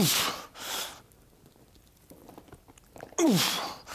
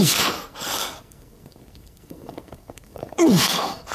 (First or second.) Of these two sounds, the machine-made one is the second